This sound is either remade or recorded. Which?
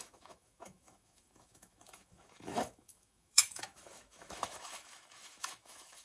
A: remade